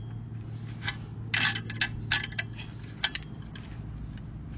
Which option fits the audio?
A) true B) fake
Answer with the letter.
A